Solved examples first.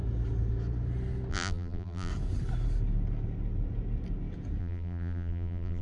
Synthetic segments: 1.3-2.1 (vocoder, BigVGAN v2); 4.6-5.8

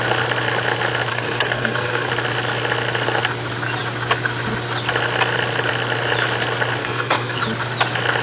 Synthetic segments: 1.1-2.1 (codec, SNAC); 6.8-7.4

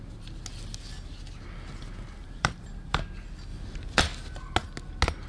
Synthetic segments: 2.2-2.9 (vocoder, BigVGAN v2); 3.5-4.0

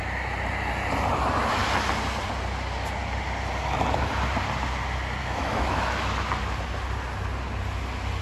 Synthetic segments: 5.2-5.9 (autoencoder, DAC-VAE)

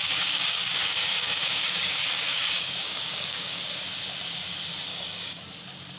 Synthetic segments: 0.0-3.6 (codec, DAC); 4.9-5.4

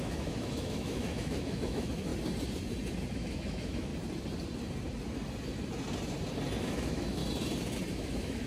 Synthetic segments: 0.0-2.1 (autoencoder, DAC-VAE); 3.1-3.9; 6.6-7.2; 7.9-8.5

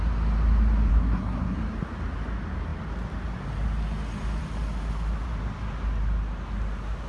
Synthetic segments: 0.9-1.6 (codec, SNAC)